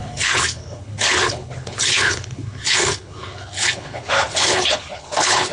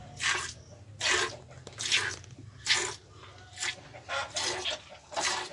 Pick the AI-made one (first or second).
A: first